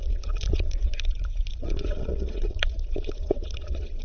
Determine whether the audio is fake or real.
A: fake